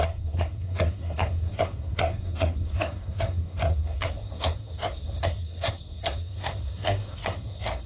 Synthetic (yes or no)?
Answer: yes